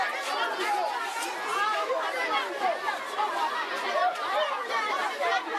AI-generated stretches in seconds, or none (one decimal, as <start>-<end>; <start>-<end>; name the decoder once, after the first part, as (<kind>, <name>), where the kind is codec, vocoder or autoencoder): 4.0-5.6 (vocoder, BigVGAN v2)